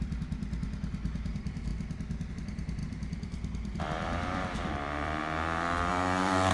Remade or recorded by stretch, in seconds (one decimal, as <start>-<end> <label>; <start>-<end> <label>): 0.0-1.7 remade; 1.7-2.3 recorded; 2.3-5.2 remade; 5.2-5.9 recorded; 5.9-6.5 remade